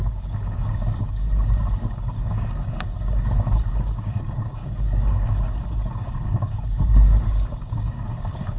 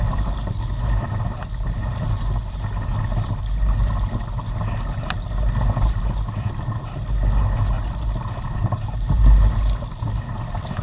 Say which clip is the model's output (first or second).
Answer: first